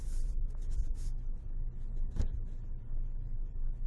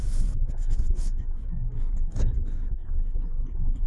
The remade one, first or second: second